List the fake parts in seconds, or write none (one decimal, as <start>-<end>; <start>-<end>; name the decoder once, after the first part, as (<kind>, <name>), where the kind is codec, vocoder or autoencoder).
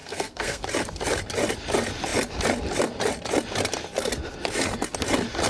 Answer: 0.0-0.6 (codec, SNAC)